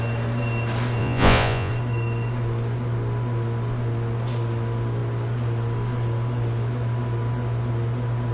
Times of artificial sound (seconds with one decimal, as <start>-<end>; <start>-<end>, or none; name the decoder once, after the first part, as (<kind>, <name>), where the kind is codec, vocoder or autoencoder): 1.0-1.7 (vocoder, Vocos)